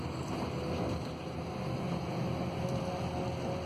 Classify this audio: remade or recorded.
recorded